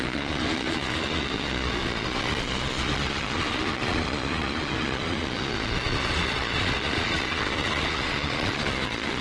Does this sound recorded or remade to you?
remade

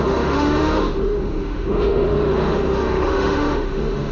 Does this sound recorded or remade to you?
remade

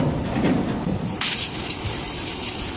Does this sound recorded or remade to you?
recorded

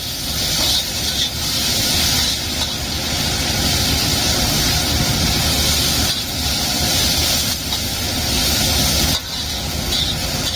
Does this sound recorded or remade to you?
recorded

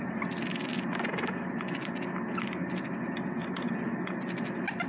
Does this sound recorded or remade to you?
recorded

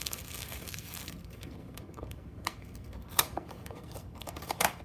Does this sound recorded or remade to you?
remade